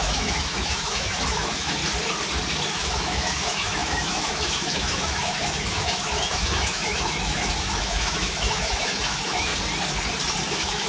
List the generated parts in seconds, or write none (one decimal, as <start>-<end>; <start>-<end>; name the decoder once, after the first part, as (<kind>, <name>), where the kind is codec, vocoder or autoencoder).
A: 0.0-1.8 (autoencoder, DAC-VAE); 2.7-9.5; 10.5-10.9